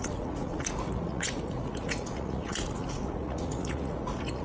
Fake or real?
fake